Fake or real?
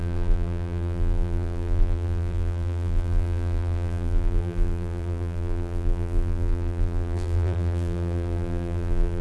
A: fake